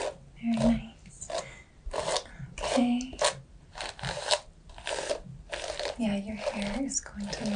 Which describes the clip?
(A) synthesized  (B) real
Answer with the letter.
B